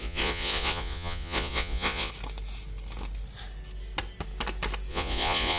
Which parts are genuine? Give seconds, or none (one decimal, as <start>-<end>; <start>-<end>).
2.1-4.9